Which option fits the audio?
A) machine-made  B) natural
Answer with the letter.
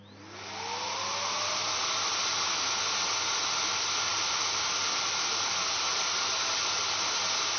B